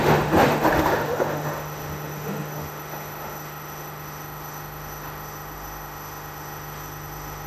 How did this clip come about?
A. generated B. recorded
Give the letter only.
A